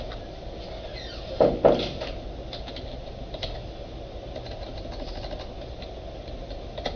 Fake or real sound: real